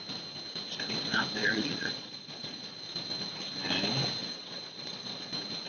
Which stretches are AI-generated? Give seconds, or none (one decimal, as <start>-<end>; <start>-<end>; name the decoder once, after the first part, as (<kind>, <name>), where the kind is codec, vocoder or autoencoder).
1.4-2.8 (vocoder, Vocos); 4.2-5.3